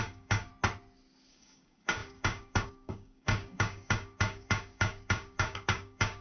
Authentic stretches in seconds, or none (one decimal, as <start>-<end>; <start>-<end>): 0.5-1.3